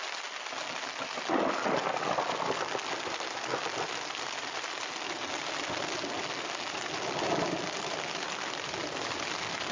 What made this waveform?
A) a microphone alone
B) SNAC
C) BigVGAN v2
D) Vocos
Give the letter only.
A